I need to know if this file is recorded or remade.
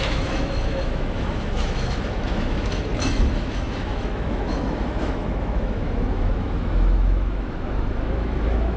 remade